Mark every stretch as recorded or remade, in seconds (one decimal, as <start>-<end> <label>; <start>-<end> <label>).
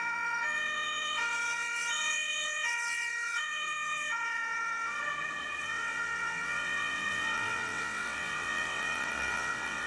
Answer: 0.0-5.0 remade; 5.0-5.6 recorded; 5.6-9.9 remade